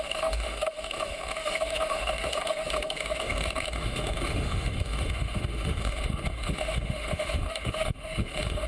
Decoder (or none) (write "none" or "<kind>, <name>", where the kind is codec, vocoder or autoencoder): autoencoder, DAC-VAE